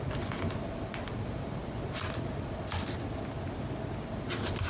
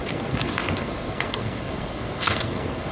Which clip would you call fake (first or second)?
second